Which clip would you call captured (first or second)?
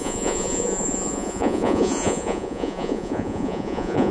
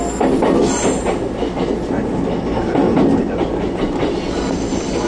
second